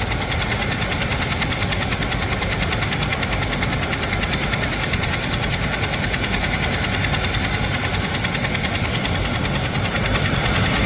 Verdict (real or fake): real